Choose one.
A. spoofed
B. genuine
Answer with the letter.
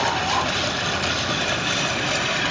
B